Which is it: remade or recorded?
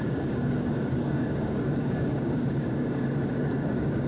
remade